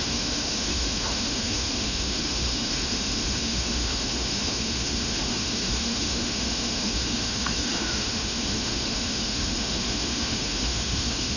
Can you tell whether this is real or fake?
fake